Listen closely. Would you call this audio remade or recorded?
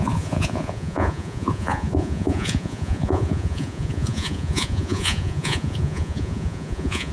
remade